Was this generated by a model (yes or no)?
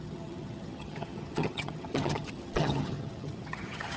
yes